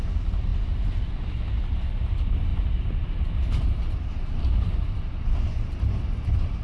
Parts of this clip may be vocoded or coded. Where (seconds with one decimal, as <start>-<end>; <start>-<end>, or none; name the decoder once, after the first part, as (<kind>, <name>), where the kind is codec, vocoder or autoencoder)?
none